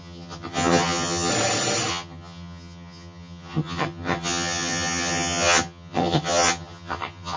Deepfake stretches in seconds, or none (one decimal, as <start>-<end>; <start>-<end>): 0.0-1.3; 1.9-7.4